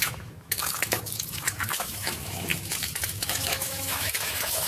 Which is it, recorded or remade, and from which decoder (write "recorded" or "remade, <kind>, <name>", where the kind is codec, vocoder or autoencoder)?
remade, autoencoder, DAC-VAE